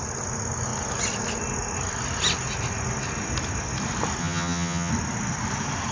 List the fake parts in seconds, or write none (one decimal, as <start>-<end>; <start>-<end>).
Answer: 4.2-4.9